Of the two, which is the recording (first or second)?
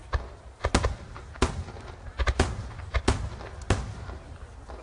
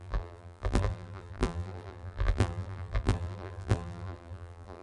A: first